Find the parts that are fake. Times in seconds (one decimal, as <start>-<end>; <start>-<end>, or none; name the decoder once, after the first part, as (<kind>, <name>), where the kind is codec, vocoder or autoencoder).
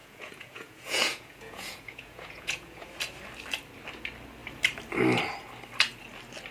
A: 0.0-3.0 (vocoder, Vocos)